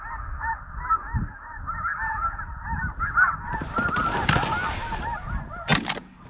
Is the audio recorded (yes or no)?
yes